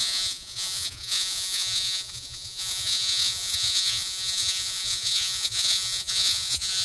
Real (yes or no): no